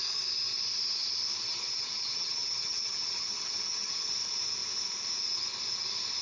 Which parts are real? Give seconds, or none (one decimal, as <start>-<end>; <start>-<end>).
0.0-1.4; 4.1-6.2

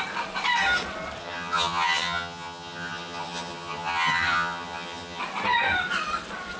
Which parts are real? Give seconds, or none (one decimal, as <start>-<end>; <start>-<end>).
0.0-1.2; 5.2-6.6

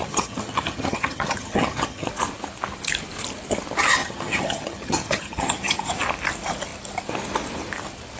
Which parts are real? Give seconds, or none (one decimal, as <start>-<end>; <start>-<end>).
2.1-4.0; 5.9-8.2